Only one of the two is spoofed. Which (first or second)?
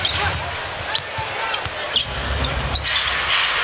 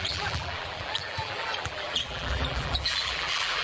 second